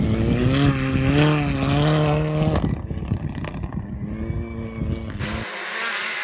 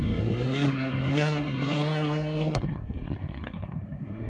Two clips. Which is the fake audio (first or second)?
second